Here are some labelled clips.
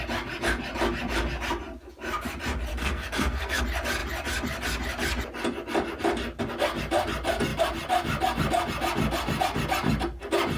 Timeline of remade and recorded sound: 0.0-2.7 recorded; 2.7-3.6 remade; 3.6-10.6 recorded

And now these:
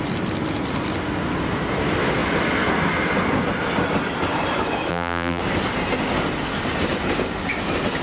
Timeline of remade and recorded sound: 0.0-4.9 recorded; 4.9-5.4 remade; 5.4-8.0 recorded

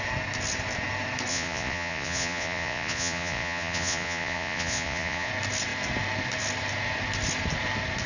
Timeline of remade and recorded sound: 0.0-1.3 recorded; 1.3-5.3 remade; 5.3-8.1 recorded